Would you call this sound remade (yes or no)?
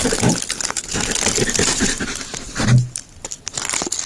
no